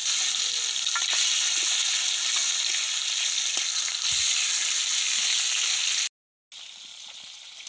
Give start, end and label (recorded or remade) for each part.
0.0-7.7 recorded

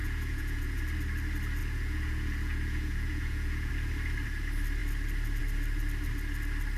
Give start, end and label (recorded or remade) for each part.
0.0-0.8 remade; 0.8-1.6 recorded; 1.6-3.7 remade; 3.7-6.8 recorded